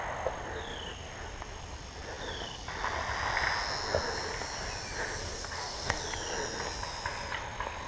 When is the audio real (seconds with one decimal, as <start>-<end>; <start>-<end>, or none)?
0.0-5.2; 6.0-7.9